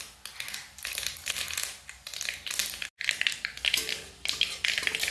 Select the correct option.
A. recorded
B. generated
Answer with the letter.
A